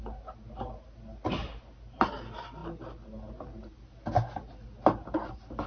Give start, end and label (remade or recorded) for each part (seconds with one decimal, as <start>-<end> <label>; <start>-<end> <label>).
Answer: 0.0-5.7 recorded